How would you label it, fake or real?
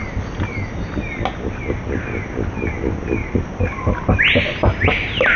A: real